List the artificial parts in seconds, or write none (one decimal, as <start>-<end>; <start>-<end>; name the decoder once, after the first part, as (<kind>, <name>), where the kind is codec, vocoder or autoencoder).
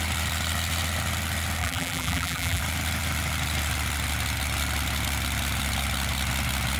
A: 1.6-2.6 (vocoder, BigVGAN v2)